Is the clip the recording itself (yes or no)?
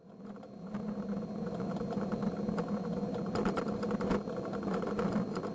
yes